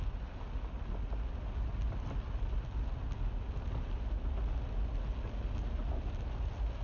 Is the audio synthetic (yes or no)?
no